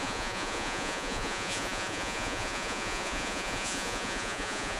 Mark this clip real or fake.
fake